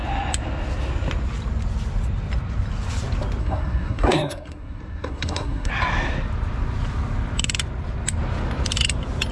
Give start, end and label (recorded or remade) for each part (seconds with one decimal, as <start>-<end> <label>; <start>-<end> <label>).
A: 0.0-3.4 recorded; 3.4-5.7 remade; 5.7-9.3 recorded